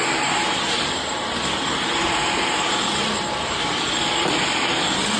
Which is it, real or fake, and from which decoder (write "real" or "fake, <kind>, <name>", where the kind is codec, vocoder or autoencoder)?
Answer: fake, vocoder, BigVGAN v2